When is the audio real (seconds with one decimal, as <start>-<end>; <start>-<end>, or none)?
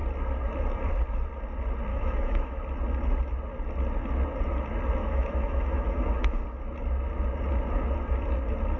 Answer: 0.0-1.9; 2.6-5.0; 6.4-8.8